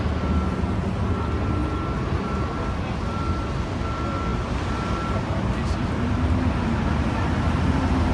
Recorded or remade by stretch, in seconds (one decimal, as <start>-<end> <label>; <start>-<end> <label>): 0.0-8.1 recorded